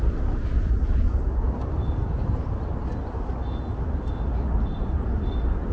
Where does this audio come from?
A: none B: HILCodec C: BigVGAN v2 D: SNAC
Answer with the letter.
A